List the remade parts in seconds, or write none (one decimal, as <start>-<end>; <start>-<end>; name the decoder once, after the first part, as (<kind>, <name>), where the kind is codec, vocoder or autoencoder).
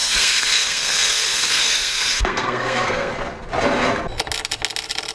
0.0-3.1 (codec, SNAC)